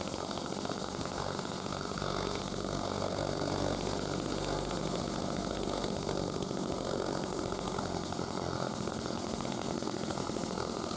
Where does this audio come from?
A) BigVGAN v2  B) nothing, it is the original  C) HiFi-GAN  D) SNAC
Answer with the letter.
D